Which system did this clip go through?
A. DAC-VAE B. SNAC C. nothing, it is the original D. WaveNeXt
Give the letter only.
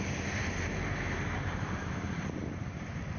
C